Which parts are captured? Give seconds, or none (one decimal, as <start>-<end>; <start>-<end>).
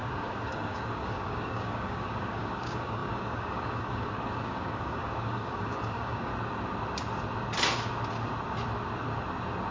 6.3-9.7